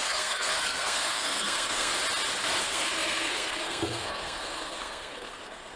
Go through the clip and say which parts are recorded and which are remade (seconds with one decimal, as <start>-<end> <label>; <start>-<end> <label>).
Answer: 0.0-1.9 remade; 1.9-2.6 recorded; 2.6-5.8 remade